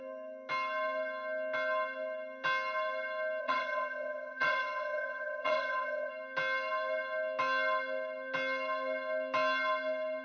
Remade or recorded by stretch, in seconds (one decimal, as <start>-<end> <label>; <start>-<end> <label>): 0.0-3.4 recorded; 3.4-6.1 remade; 6.1-10.2 recorded